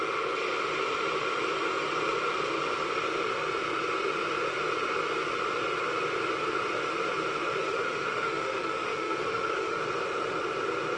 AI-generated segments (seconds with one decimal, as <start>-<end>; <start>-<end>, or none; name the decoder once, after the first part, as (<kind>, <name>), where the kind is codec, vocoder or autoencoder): 7.6-9.8 (autoencoder, DAC-VAE)